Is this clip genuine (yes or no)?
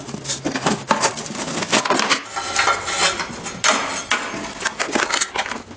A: yes